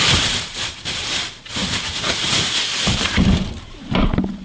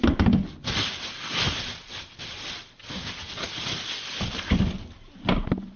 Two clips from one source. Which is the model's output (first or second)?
first